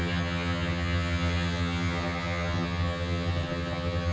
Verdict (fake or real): fake